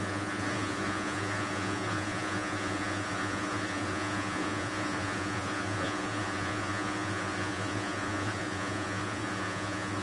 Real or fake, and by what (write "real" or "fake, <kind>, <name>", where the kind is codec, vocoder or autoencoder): fake, vocoder, Vocos